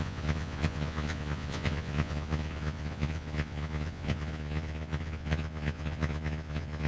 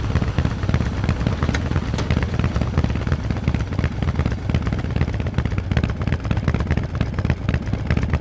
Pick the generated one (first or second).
first